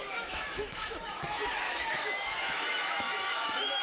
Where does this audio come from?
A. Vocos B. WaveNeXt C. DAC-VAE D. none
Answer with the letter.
C